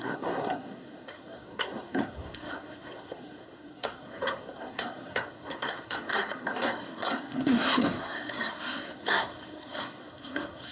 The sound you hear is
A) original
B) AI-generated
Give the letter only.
B